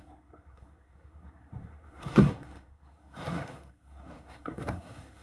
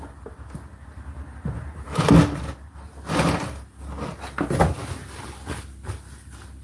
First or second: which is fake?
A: first